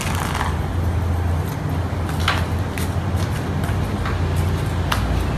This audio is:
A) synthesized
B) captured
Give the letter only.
B